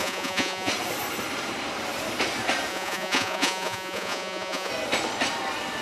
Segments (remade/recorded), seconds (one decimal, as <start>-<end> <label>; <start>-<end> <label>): 0.0-0.7 remade; 0.7-2.7 recorded; 2.7-4.7 remade; 4.7-5.8 recorded